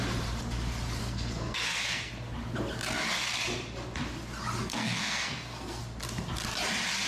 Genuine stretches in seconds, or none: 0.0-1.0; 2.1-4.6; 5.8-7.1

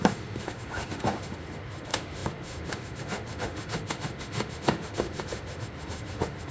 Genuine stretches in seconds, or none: none

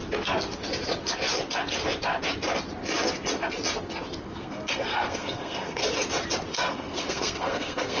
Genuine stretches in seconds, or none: 0.0-4.2; 5.8-6.5

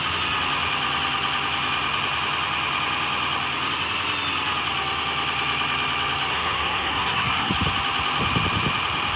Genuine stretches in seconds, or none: 0.0-6.3; 7.5-9.2

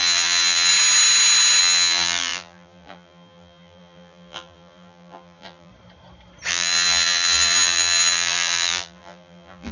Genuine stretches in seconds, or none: 0.7-1.6; 5.7-6.5

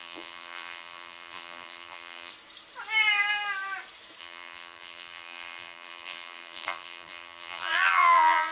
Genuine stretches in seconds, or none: 2.3-4.2